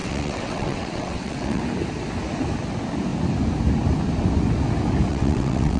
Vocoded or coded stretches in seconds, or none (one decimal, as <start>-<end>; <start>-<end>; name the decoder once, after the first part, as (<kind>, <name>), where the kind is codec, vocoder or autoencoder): 0.0-1.6 (vocoder, WaveNeXt); 5.1-5.8